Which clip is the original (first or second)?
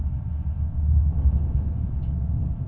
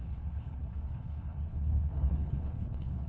first